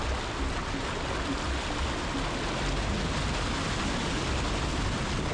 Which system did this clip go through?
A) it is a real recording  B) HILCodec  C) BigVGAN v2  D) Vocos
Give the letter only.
A